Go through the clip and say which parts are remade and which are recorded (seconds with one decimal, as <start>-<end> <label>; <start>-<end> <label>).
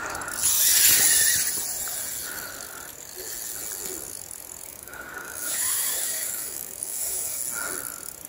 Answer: 0.0-4.7 recorded; 4.7-7.4 remade; 7.4-8.3 recorded